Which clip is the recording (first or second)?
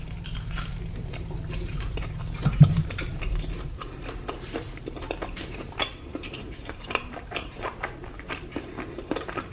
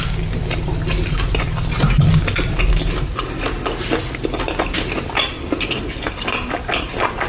second